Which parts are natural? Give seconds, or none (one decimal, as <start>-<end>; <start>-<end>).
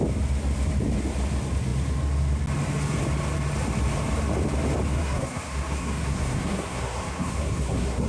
0.0-4.9